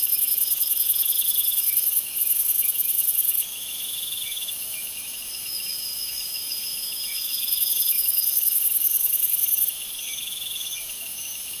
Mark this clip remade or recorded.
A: remade